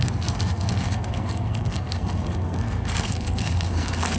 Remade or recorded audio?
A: remade